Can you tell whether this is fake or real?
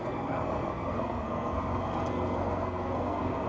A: fake